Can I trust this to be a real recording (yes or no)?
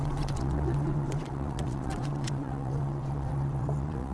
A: no